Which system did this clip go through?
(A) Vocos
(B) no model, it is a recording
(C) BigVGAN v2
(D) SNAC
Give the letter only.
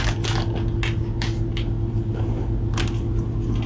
B